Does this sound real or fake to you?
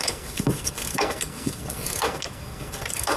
fake